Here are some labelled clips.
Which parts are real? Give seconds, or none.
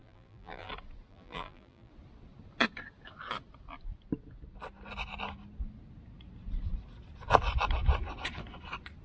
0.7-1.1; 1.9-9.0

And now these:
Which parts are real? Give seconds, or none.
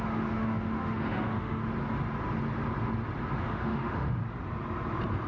1.6-3.4; 4.2-5.3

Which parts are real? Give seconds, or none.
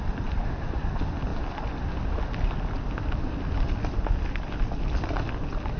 0.0-5.8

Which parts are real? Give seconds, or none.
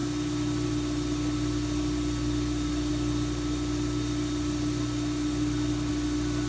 0.0-6.5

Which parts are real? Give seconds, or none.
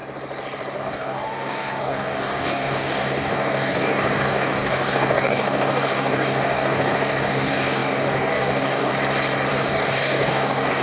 0.0-0.8; 8.9-9.5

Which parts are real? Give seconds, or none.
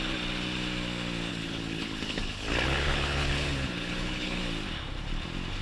0.0-1.3; 4.4-5.6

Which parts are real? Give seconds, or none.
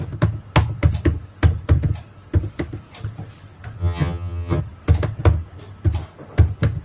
0.0-3.8; 4.6-6.8